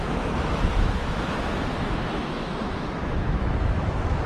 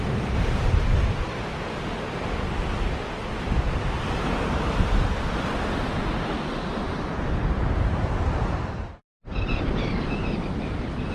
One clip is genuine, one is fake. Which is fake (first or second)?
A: first